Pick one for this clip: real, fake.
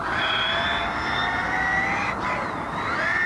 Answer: real